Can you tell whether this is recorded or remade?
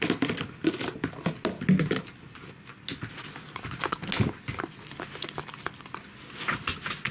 recorded